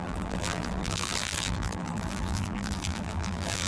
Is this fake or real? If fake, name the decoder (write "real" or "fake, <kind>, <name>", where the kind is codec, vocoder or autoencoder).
fake, vocoder, BigVGAN v2